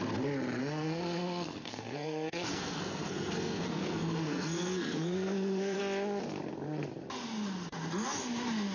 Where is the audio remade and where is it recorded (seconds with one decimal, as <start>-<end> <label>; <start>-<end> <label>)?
0.0-0.6 recorded; 0.6-5.8 remade; 5.8-8.7 recorded